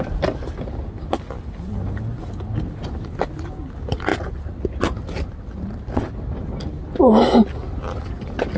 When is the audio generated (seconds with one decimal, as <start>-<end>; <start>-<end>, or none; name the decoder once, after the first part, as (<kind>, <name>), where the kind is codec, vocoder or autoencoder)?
none